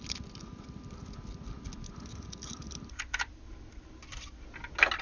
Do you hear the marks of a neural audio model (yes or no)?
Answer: no